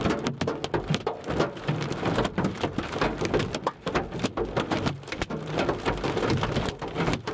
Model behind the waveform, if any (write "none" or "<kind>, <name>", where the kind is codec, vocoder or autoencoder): none